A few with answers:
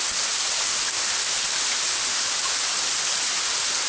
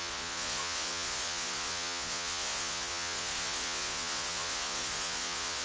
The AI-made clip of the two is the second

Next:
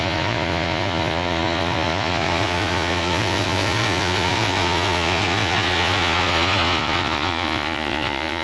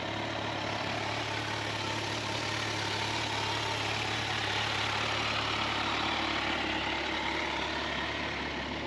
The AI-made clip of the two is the first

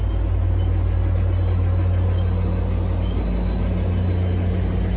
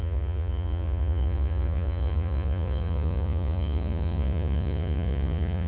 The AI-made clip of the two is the second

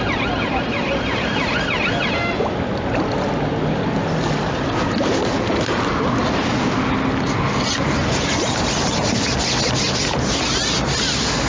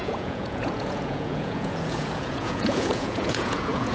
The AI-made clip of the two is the second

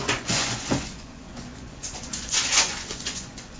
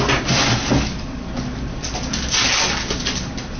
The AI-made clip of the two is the first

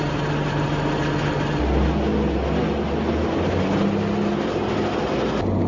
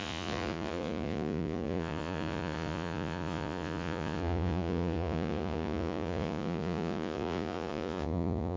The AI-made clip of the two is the second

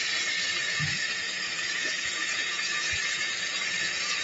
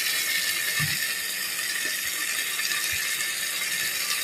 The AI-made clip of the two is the first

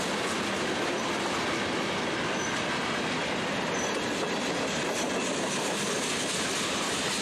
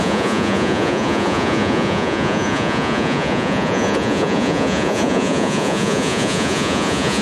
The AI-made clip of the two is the second